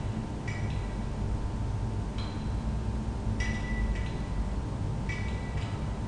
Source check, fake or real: real